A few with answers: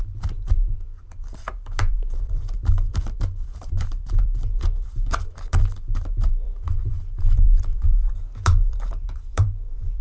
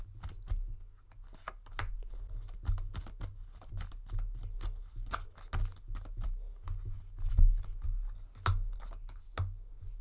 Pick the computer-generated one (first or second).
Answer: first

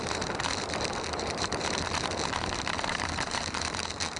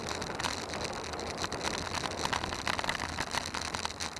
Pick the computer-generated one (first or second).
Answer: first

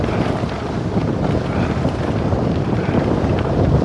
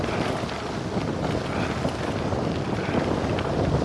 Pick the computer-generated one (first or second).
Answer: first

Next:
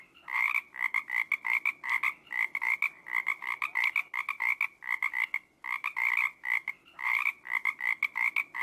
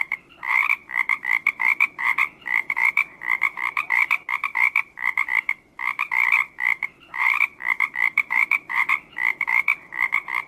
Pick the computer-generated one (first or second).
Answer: second